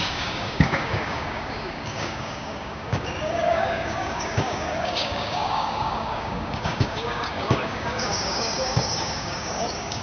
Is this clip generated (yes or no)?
yes